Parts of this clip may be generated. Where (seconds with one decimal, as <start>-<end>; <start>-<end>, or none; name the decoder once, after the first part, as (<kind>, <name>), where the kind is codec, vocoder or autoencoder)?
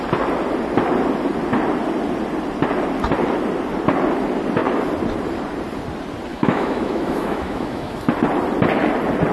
6.3-8.0 (autoencoder, DAC-VAE)